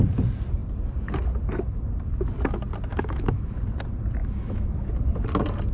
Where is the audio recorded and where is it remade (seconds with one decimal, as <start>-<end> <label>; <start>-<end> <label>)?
0.0-2.9 recorded; 2.9-3.6 remade; 3.6-4.2 recorded; 4.2-4.9 remade; 4.9-5.7 recorded